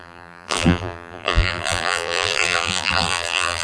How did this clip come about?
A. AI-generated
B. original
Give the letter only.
A